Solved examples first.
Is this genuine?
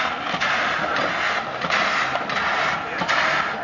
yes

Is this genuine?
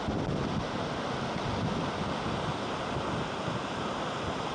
yes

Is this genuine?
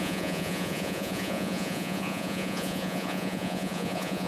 no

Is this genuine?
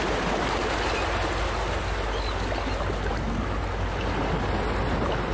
yes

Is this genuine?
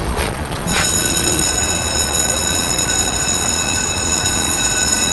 no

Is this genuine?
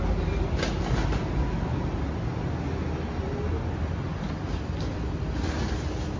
yes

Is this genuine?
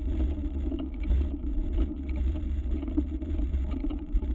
no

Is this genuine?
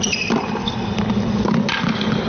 yes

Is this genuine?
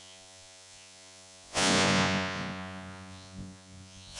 no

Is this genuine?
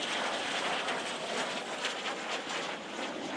yes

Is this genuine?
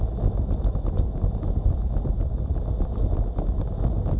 yes